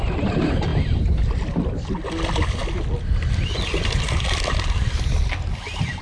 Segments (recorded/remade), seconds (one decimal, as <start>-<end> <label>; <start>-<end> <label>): 0.0-6.0 recorded